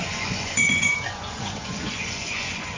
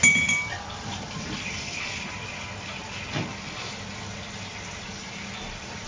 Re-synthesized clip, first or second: first